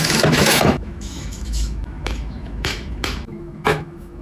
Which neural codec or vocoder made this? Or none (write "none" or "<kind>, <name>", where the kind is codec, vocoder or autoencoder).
autoencoder, DAC-VAE